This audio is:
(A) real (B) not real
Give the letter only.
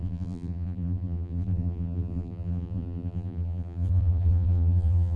B